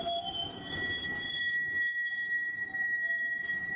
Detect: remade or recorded recorded